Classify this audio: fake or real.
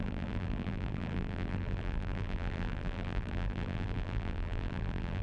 fake